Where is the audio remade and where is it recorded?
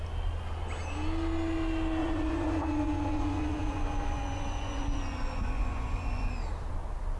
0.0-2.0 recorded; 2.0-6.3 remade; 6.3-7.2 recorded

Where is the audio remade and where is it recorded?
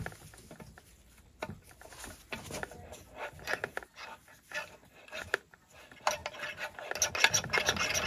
0.0-8.1 recorded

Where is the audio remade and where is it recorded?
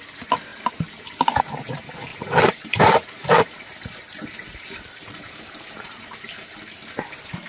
0.0-2.1 recorded; 2.1-6.6 remade; 6.6-7.5 recorded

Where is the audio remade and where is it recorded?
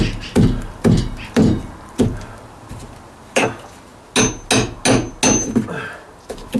0.0-3.9 remade; 3.9-5.3 recorded; 5.3-6.6 remade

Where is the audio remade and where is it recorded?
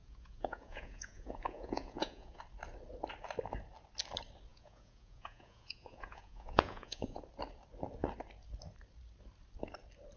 0.0-2.4 remade; 2.4-4.5 recorded; 4.5-7.2 remade; 7.2-10.2 recorded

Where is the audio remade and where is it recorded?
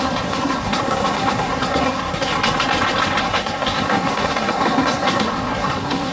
0.0-2.3 remade; 2.3-3.2 recorded; 3.2-6.1 remade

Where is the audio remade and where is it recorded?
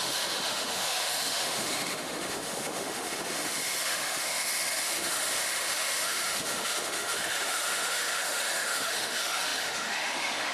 0.0-10.5 remade